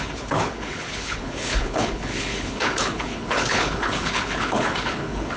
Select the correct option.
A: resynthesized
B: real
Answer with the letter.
A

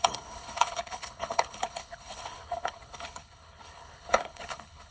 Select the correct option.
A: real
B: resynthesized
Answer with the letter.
B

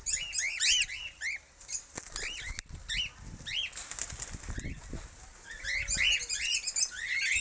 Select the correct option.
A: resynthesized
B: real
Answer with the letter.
B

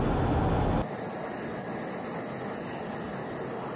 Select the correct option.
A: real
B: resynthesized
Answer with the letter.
A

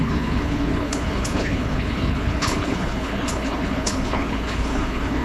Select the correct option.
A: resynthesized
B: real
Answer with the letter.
A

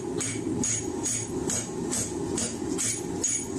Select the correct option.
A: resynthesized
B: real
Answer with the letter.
B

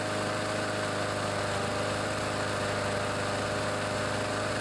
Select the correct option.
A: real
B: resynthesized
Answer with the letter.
A